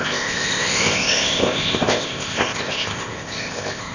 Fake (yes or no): yes